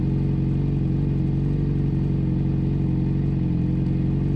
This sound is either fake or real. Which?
real